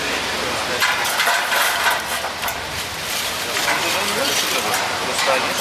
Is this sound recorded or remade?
recorded